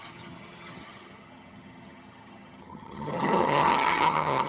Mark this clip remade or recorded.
remade